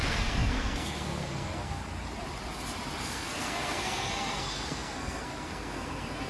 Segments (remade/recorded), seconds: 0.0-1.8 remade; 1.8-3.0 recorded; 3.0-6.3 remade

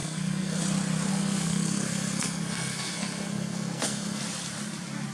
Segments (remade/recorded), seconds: 0.0-0.6 remade; 0.6-1.1 recorded; 1.1-4.2 remade; 4.2-5.1 recorded

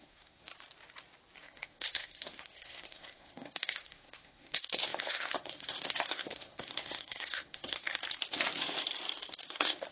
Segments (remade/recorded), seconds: 0.0-0.5 remade; 0.5-1.4 recorded; 1.4-8.0 remade; 8.0-9.4 recorded; 9.4-9.9 remade

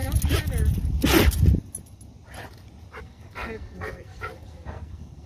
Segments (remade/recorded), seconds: 0.0-3.0 recorded; 3.0-5.3 remade

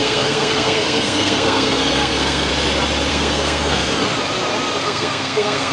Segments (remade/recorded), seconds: 0.0-2.5 remade; 2.5-3.1 recorded; 3.1-3.9 remade; 3.9-4.8 recorded; 4.8-5.7 remade

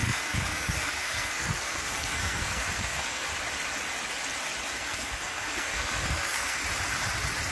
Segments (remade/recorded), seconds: 0.0-3.3 remade; 3.3-4.7 recorded; 4.7-6.6 remade; 6.6-7.5 recorded

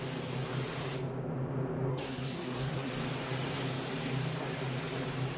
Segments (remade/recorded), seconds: 0.0-1.9 recorded; 1.9-2.9 remade; 2.9-5.4 recorded